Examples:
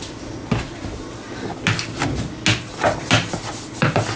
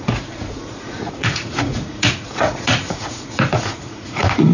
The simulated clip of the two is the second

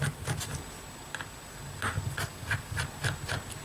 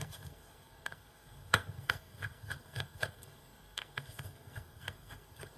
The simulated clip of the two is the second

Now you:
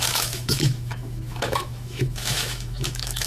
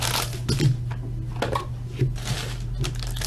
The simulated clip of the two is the first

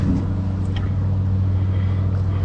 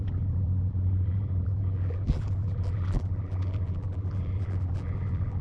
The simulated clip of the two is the second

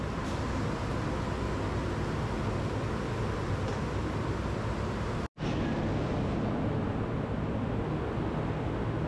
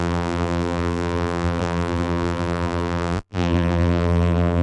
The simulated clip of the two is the second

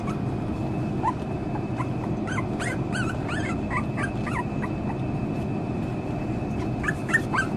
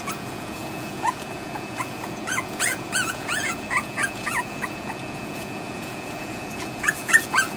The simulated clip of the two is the second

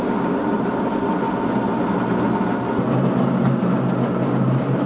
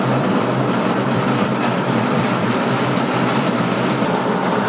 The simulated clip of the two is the second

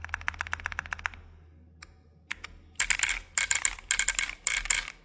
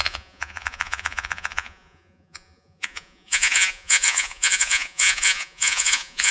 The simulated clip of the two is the second